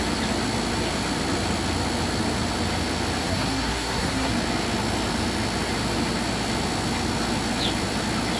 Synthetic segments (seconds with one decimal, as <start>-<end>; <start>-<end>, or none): 3.2-4.3